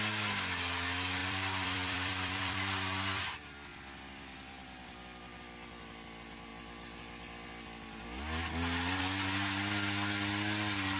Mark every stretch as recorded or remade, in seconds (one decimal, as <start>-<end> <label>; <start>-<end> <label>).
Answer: 0.0-1.2 recorded; 1.2-3.3 remade; 3.3-3.7 recorded; 3.7-5.8 remade; 5.8-11.0 recorded